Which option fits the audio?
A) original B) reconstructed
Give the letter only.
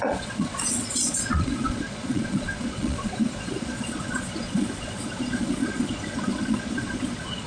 B